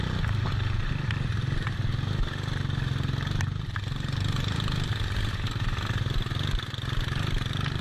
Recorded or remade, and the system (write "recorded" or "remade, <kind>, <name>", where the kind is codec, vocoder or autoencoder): recorded